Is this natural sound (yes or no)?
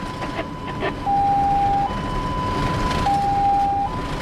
yes